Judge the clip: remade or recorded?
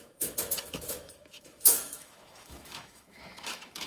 remade